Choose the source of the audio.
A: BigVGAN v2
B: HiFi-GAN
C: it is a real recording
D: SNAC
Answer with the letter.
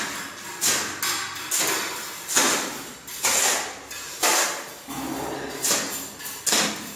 C